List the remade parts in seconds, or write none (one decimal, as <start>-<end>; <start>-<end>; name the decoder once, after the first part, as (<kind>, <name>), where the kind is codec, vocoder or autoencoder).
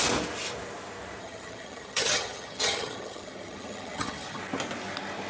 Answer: 1.2-4.4 (vocoder, HiFi-GAN)